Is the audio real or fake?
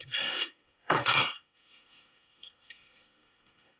fake